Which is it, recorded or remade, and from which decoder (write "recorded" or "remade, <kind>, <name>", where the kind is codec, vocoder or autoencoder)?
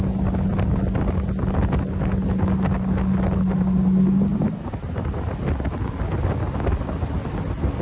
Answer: recorded